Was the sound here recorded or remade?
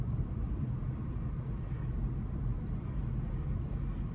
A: recorded